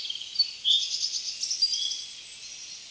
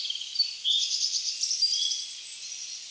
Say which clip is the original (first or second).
first